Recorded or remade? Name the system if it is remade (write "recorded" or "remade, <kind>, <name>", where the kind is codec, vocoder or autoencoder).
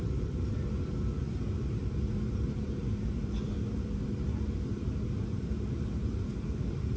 remade, vocoder, BigVGAN v2